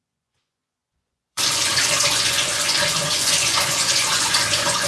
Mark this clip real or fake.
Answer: fake